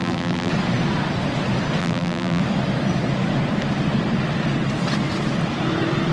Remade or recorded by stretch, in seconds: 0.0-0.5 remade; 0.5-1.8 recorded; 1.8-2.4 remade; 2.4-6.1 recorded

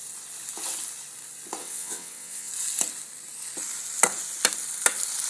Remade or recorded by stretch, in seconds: 0.0-1.6 recorded; 1.6-2.5 remade; 2.5-5.3 recorded

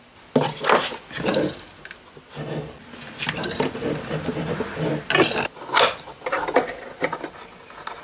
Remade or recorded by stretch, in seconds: 0.0-8.0 recorded

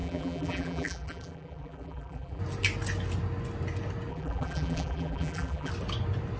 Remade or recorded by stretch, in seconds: 0.0-2.4 remade; 2.4-4.1 recorded; 4.1-5.7 remade; 5.7-6.4 recorded

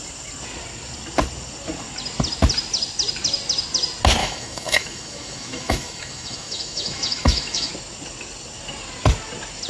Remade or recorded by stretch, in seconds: 0.0-4.2 recorded; 4.2-7.7 remade; 7.7-9.7 recorded

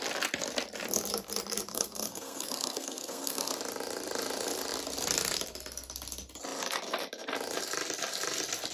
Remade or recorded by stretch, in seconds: 0.0-1.7 recorded; 1.7-3.5 remade; 3.5-8.7 recorded